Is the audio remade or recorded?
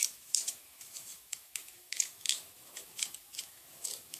remade